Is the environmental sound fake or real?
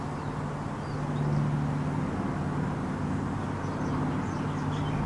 real